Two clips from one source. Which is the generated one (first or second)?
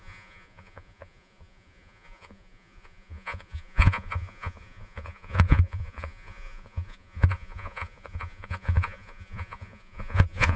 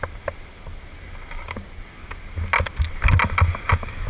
first